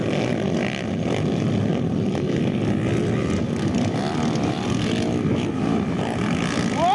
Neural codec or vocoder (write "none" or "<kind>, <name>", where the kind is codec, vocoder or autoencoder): none